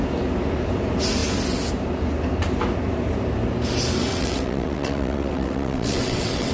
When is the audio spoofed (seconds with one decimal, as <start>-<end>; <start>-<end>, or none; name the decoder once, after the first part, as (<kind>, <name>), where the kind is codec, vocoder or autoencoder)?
4.1-6.5 (vocoder, WaveNeXt)